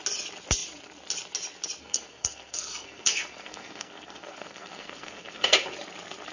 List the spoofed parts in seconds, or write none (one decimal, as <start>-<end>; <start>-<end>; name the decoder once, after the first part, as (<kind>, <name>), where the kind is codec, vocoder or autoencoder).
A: 1.8-5.6 (codec, SNAC)